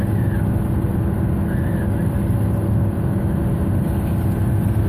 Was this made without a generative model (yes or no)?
yes